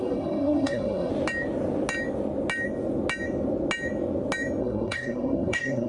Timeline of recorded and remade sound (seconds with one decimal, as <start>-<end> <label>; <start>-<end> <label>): 0.0-1.1 remade; 1.1-4.6 recorded; 4.6-5.9 remade